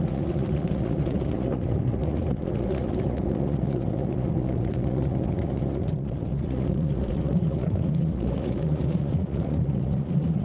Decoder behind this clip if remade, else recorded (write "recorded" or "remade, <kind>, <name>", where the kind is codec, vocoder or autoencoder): remade, vocoder, Vocos